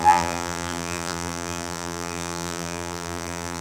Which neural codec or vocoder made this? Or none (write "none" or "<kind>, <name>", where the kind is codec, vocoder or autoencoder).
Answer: vocoder, BigVGAN v2